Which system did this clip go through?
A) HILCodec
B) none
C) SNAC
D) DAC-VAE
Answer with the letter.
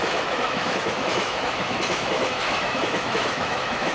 D